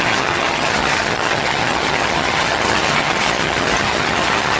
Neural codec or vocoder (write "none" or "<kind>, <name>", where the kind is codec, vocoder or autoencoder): vocoder, HiFi-GAN